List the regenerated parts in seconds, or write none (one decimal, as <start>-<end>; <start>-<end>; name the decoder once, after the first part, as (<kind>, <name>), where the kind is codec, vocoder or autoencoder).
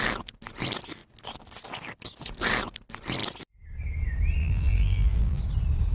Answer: 4.4-5.4 (vocoder, BigVGAN v2)